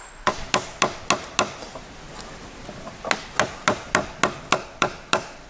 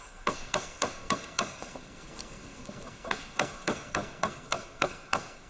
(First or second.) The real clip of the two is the first